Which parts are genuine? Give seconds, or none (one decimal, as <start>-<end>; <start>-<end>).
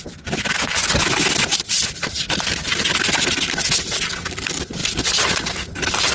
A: 0.0-6.1